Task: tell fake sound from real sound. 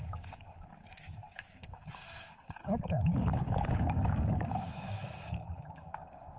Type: fake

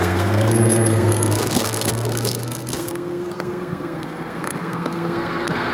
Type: fake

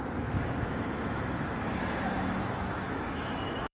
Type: fake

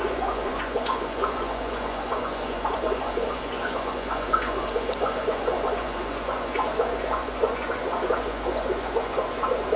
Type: fake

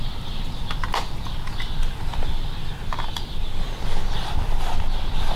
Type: real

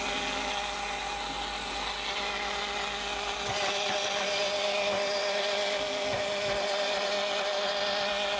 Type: real